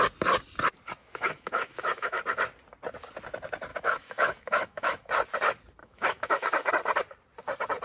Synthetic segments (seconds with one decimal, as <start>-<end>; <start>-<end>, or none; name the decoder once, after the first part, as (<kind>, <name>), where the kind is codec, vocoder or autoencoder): 1.0-2.2 (autoencoder, DAC-VAE); 3.7-5.1; 5.8-6.7